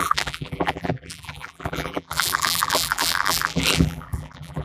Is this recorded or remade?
remade